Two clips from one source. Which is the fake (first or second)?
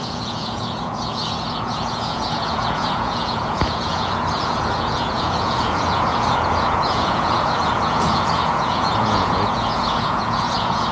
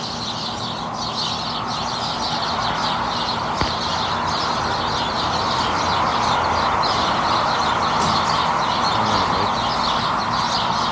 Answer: first